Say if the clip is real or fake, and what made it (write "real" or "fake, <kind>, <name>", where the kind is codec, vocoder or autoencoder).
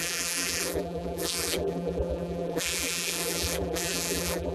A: fake, vocoder, BigVGAN v2